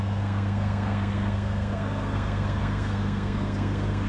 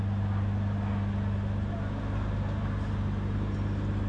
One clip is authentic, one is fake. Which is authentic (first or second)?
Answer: second